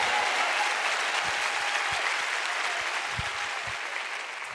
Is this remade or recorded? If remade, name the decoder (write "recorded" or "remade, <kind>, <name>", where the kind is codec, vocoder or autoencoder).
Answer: recorded